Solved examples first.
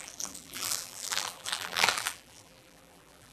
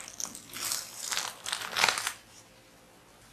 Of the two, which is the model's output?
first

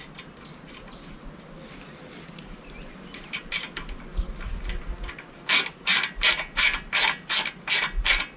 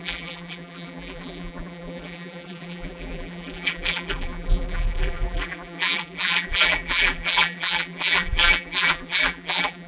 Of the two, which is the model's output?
second